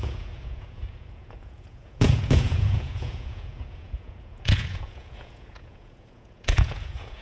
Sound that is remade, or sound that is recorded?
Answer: remade